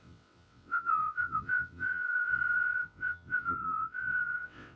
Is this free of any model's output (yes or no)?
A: no